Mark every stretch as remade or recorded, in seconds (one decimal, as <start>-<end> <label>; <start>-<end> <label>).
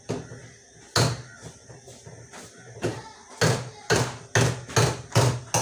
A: 0.0-5.6 recorded